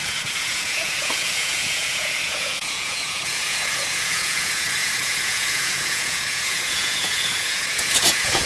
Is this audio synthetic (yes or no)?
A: yes